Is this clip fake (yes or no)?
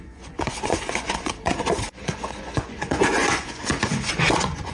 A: yes